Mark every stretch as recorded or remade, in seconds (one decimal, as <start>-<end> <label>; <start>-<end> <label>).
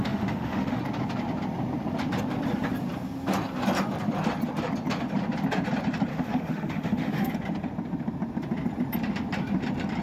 0.0-0.8 remade; 0.8-6.1 recorded; 6.1-7.3 remade; 7.3-10.0 recorded